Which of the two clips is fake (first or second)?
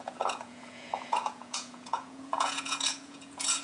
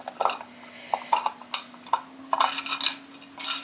first